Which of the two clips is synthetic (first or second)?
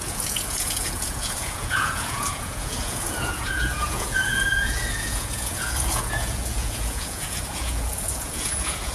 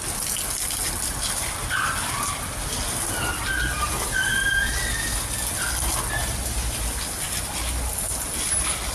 first